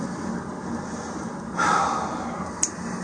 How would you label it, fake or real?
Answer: real